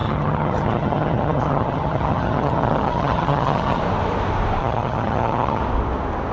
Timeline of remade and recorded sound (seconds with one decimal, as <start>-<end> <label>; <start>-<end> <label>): 0.0-3.8 remade; 3.8-4.6 recorded; 4.6-5.6 remade; 5.6-6.3 recorded